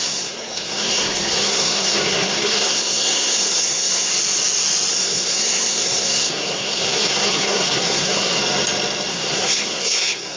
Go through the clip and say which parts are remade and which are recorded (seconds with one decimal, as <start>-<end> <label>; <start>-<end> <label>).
0.0-4.1 remade; 4.1-4.9 recorded; 4.9-8.4 remade; 8.4-9.1 recorded; 9.1-10.4 remade